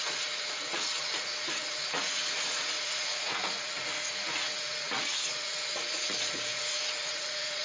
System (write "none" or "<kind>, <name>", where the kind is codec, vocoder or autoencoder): vocoder, Vocos